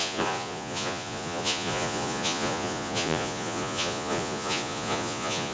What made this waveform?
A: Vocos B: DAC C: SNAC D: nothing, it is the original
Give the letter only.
A